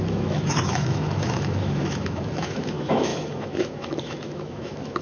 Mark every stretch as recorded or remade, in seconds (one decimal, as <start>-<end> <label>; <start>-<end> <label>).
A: 0.0-5.0 remade